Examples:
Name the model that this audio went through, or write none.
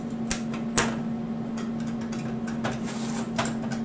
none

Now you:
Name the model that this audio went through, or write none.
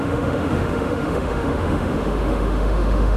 autoencoder, DAC-VAE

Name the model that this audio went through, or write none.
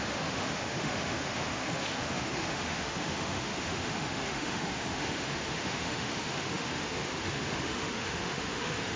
autoencoder, DAC-VAE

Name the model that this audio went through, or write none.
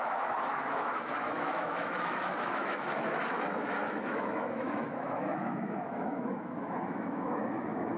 autoencoder, DAC-VAE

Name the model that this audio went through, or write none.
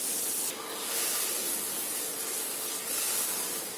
none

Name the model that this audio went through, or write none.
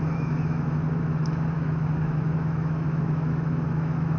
autoencoder, DAC-VAE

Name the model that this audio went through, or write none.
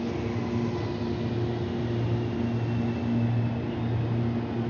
none